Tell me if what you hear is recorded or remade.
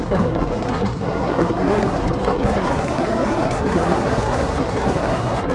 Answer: remade